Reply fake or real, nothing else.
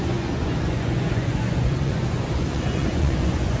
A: fake